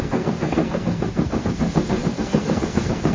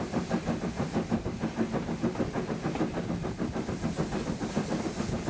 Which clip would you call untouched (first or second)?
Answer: second